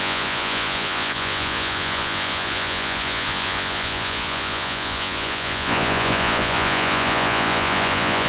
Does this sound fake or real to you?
fake